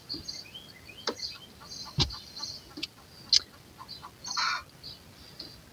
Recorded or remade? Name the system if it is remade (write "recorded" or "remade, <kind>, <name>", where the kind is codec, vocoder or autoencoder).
recorded